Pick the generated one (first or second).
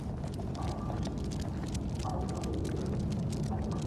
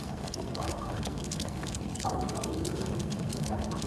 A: second